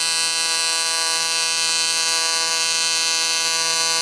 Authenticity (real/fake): real